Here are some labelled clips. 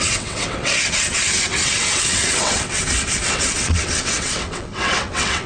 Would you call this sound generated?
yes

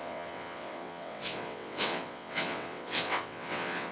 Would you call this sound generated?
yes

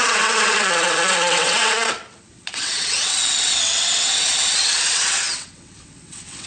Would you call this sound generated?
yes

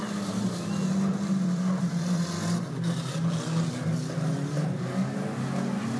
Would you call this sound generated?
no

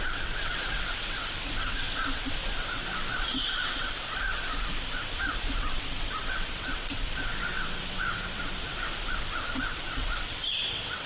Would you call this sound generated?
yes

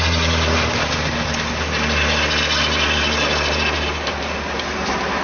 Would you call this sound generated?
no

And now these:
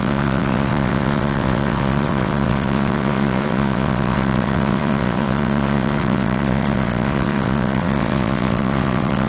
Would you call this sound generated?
yes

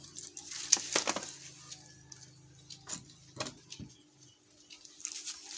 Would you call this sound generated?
no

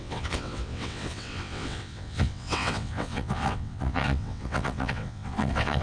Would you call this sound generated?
yes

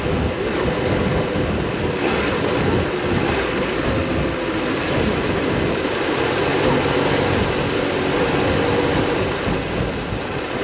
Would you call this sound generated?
no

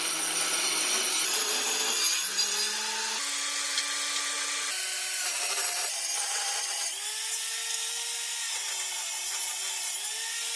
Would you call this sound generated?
no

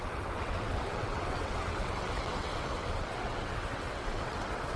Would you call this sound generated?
yes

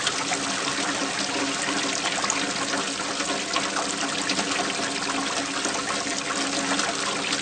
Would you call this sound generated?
no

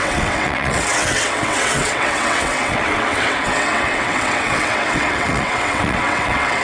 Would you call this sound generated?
yes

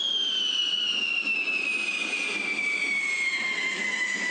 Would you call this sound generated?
no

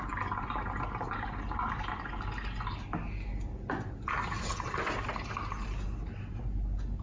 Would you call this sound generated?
no